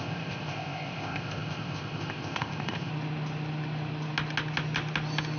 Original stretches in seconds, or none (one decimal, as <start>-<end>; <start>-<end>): 2.9-5.4